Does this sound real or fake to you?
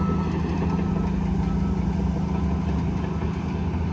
real